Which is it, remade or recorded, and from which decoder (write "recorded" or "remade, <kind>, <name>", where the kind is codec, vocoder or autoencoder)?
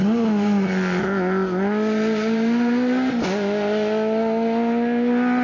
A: recorded